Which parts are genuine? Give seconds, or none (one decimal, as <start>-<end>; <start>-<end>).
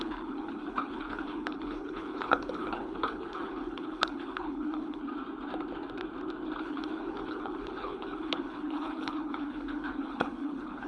5.0-6.6